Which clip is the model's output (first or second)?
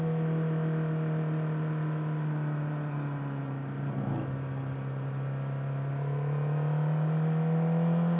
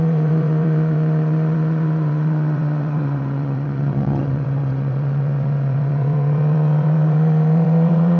second